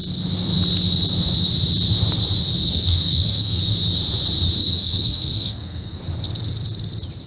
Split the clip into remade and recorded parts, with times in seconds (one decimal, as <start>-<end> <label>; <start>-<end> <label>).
0.0-2.6 recorded; 2.6-3.6 remade; 3.6-4.6 recorded; 4.6-6.0 remade; 6.0-7.3 recorded